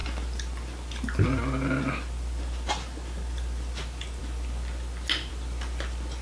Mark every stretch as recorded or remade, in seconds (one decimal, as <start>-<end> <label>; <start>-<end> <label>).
0.0-6.2 recorded